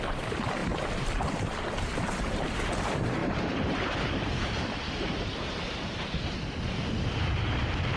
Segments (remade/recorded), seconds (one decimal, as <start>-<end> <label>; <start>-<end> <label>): 0.0-3.2 recorded; 3.2-6.4 remade; 6.4-8.0 recorded